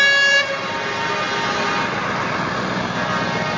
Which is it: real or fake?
real